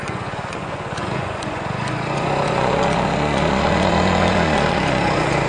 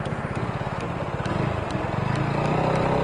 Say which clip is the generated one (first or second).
first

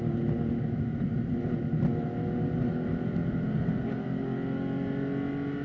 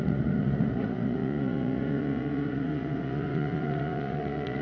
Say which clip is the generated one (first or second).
second